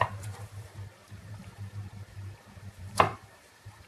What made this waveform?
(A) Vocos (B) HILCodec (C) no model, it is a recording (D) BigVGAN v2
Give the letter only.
D